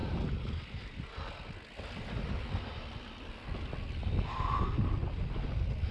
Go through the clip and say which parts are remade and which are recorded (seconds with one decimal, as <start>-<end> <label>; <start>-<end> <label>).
0.0-5.9 recorded